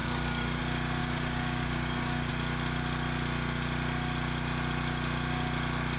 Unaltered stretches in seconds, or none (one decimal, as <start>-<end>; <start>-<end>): 0.6-1.0; 2.3-6.0